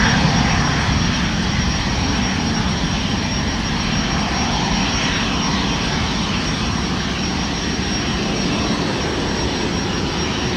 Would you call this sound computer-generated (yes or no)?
no